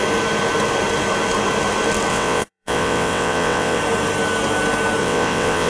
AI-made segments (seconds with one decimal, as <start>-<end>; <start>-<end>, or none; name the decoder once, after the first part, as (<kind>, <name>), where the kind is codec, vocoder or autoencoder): 2.1-3.8 (vocoder, WaveNeXt); 5.0-5.7

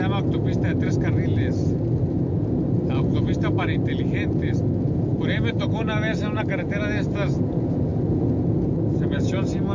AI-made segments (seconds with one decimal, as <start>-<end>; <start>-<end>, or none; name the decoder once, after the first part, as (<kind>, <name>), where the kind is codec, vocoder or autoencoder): none

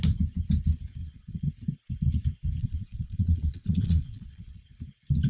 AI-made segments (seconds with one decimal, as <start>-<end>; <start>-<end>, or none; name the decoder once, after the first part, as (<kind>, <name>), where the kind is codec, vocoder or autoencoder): 1.0-1.5 (vocoder, Vocos); 2.6-4.6